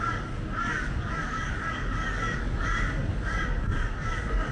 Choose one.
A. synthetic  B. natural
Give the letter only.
A